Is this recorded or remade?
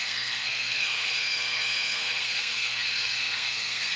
remade